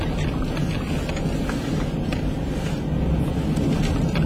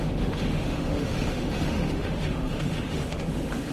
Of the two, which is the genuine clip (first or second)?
first